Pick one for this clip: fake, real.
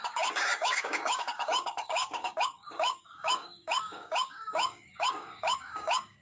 fake